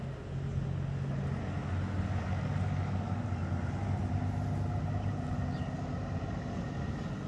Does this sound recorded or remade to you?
recorded